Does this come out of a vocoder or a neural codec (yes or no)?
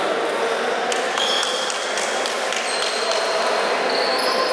no